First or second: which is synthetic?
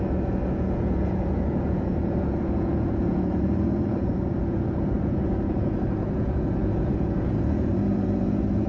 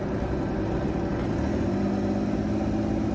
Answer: first